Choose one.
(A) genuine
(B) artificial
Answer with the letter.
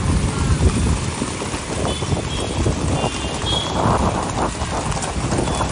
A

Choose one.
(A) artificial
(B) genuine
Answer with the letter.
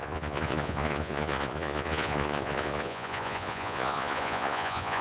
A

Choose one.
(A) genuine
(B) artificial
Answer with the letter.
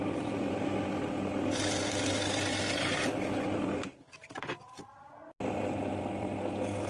A